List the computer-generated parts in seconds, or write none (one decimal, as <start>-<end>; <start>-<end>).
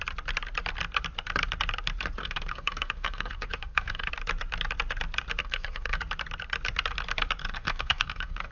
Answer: 2.2-4.1; 5.4-6.0; 7.4-8.5